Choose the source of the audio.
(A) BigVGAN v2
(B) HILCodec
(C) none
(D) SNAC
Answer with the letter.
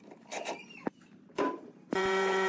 A